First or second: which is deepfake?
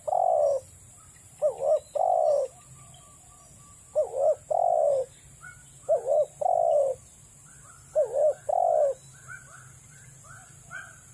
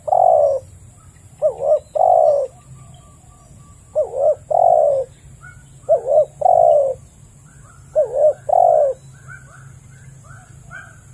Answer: first